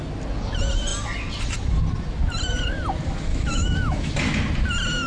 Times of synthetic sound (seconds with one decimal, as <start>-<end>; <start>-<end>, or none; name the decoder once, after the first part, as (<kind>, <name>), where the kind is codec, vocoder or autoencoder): 3.3-4.1 (autoencoder, DAC-VAE)